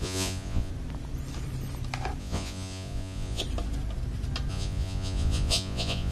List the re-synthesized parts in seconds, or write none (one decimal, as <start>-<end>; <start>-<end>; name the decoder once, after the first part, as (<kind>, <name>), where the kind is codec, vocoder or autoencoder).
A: 0.0-0.7 (vocoder, Vocos); 2.2-3.4; 4.5-6.1